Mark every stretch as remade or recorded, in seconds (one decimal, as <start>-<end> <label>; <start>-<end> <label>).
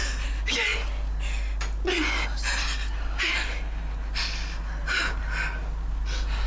0.0-6.5 recorded